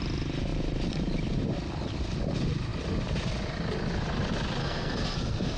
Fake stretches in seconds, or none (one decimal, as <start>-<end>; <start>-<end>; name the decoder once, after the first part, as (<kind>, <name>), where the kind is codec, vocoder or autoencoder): 4.6-5.6 (codec, SNAC)